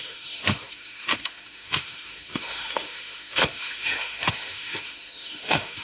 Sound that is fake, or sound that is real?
fake